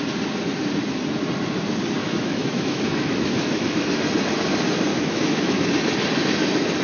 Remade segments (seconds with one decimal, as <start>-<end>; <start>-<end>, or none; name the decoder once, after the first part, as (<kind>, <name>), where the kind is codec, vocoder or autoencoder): 2.0-3.9 (autoencoder, DAC-VAE); 4.9-5.7